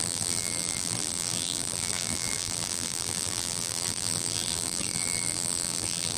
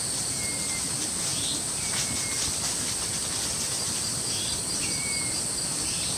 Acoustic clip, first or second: second